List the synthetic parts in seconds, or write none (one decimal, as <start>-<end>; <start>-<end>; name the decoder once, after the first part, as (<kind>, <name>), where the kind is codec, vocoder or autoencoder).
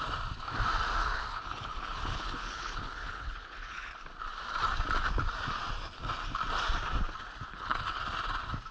1.0-4.0 (codec, HILCodec); 7.5-8.0